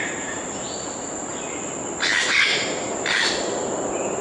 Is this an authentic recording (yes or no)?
yes